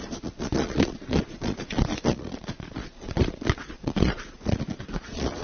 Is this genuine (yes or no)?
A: no